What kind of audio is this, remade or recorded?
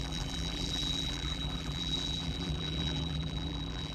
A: remade